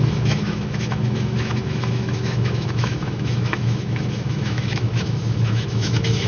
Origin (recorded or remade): remade